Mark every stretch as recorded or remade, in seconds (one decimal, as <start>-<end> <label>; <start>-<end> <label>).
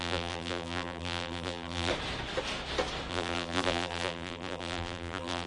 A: 0.0-1.9 remade; 1.9-3.1 recorded; 3.1-5.5 remade